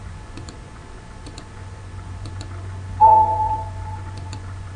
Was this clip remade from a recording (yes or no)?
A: yes